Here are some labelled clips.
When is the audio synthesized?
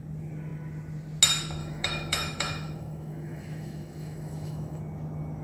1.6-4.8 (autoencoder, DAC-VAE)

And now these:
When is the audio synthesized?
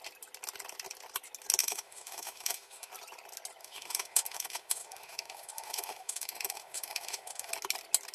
1.6-2.9 (autoencoder, DAC-VAE); 3.6-7.5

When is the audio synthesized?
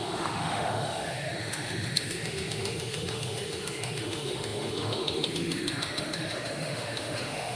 0.0-7.6 (autoencoder, DAC-VAE)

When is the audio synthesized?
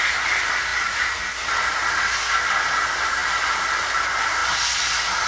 none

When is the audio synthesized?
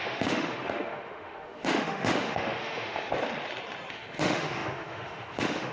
0.0-3.1 (autoencoder, DAC-VAE); 3.9-5.7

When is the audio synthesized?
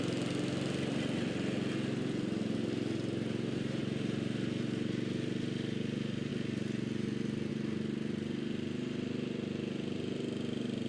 none